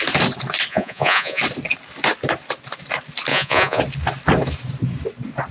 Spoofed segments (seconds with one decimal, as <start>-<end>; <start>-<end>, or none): 0.7-1.4; 3.3-3.8